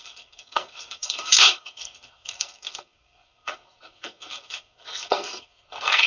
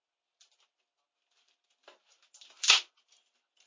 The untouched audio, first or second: second